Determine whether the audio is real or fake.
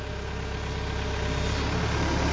real